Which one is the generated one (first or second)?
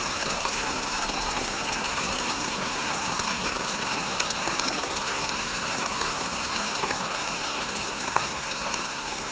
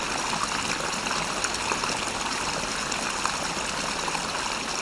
first